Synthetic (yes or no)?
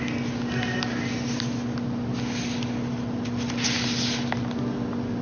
no